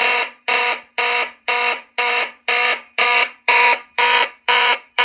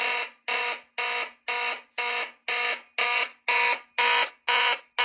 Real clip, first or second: second